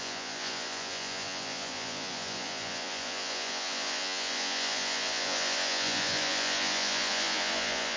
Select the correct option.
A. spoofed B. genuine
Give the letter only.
A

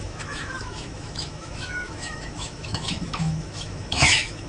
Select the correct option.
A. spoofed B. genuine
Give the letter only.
A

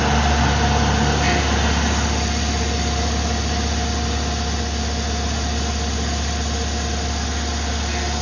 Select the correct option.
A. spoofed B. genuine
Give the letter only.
B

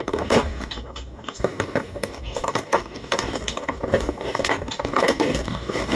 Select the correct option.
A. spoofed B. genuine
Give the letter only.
A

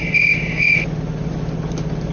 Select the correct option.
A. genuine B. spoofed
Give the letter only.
A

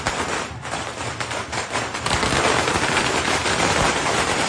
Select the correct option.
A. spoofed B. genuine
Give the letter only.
A